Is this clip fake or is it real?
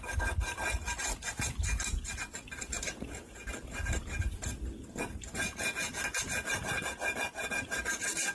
real